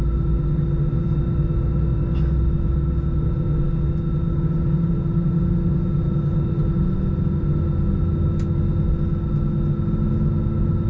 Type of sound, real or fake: real